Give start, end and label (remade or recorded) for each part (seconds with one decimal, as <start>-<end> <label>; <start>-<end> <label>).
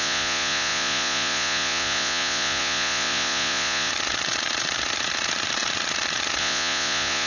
0.0-3.9 remade; 3.9-6.4 recorded; 6.4-7.3 remade